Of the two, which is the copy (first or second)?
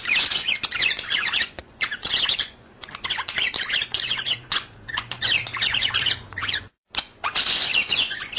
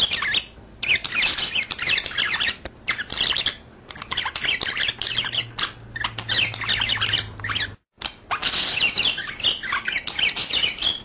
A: first